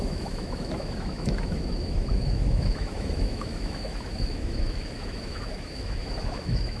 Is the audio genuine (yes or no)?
no